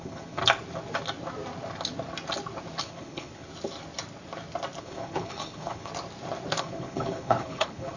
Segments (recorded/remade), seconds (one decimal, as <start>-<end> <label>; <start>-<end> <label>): 0.0-0.4 remade; 0.4-2.8 recorded; 2.8-3.5 remade; 3.5-4.8 recorded; 4.8-5.9 remade; 5.9-6.6 recorded; 6.6-8.0 remade